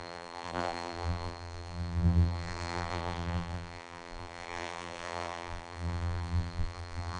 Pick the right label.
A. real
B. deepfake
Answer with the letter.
B